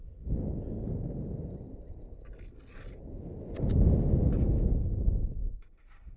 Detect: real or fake real